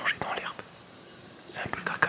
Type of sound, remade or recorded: recorded